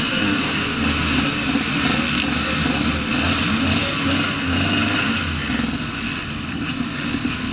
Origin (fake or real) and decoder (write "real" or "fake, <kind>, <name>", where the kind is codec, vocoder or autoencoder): real